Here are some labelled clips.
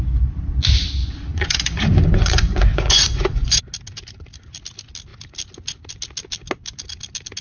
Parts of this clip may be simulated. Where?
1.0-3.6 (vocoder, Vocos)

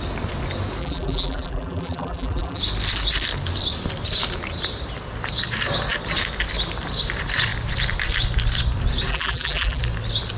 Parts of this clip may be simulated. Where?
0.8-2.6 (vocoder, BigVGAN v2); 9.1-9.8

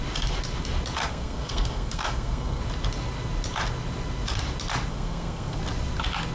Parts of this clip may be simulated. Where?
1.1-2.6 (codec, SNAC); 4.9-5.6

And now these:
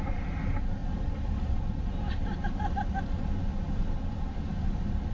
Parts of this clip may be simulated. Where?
0.8-2.7 (vocoder, BigVGAN v2); 3.5-4.1

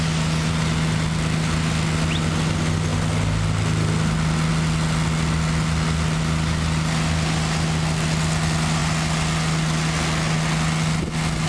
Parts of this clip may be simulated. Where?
none

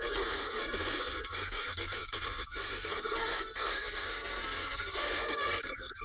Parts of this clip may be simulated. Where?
0.0-6.0 (codec, SNAC)

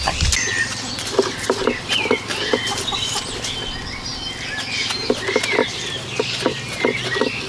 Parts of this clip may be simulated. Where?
none

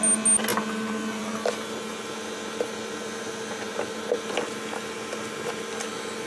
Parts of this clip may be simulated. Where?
none